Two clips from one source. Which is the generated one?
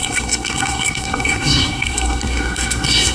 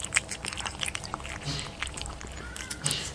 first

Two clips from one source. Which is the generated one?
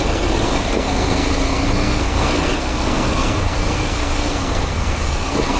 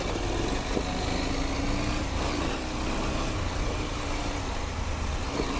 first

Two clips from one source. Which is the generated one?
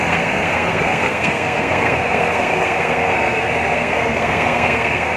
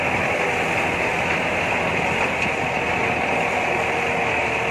first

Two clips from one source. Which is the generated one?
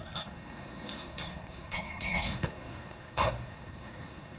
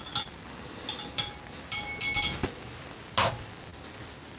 first